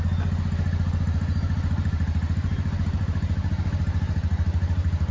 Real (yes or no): yes